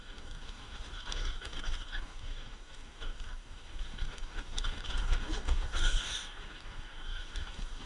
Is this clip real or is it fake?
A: fake